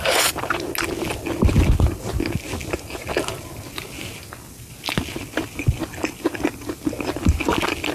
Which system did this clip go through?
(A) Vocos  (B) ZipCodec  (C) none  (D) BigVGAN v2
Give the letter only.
C